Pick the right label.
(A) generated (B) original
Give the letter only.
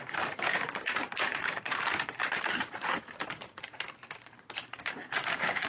A